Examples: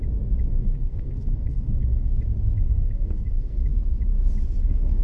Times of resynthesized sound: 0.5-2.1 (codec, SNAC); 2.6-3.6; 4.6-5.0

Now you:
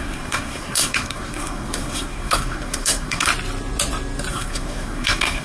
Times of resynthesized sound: 0.0-3.3 (codec, SNAC); 4.3-5.4

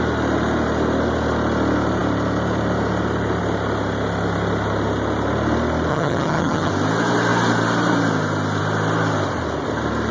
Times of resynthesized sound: 5.9-6.7 (vocoder, HiFi-GAN)

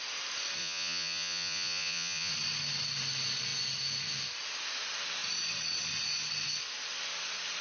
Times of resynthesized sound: 0.6-2.3 (vocoder, Vocos)

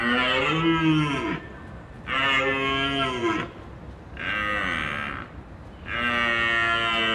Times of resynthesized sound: none

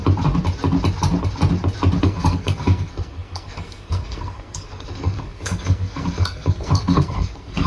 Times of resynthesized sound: 2.0-7.7 (codec, SNAC)